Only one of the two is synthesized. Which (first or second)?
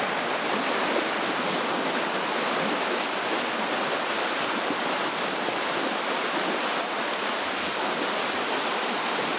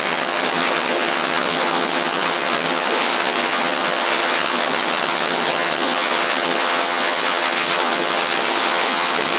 second